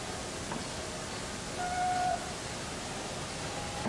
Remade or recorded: recorded